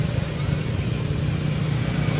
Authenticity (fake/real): real